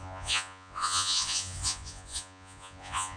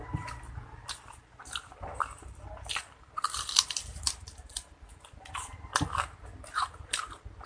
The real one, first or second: second